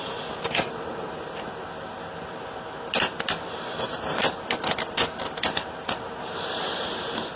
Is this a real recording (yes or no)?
yes